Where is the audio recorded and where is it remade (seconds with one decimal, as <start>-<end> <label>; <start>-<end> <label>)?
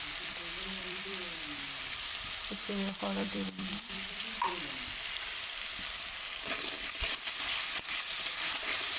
0.0-1.2 remade; 1.2-2.2 recorded; 2.2-9.0 remade